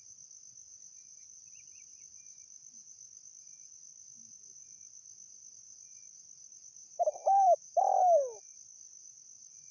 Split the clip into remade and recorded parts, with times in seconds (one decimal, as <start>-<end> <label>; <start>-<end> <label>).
0.0-6.8 recorded; 6.8-7.8 remade; 7.8-9.7 recorded